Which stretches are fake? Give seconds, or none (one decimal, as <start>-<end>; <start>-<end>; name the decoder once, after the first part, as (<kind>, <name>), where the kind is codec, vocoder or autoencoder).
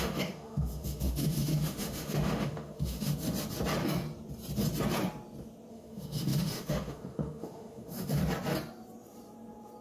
0.0-3.1 (autoencoder, DAC-VAE); 5.7-8.2